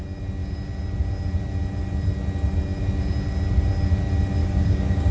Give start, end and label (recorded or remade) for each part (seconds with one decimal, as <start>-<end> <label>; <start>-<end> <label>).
0.0-4.4 recorded; 4.4-5.1 remade